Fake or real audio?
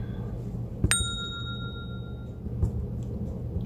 real